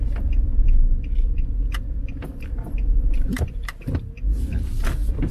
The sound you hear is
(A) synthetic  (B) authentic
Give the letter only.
A